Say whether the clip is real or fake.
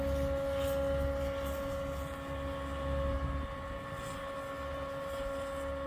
real